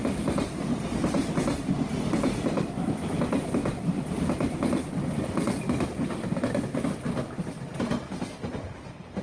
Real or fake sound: real